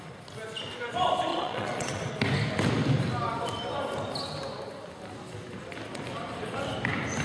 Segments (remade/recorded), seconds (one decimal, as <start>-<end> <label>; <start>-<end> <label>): 0.0-1.3 recorded; 1.3-2.1 remade; 2.1-7.2 recorded